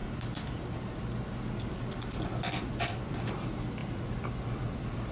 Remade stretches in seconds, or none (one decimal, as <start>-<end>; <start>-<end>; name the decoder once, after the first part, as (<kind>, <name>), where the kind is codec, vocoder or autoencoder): 2.9-5.1 (vocoder, BigVGAN v2)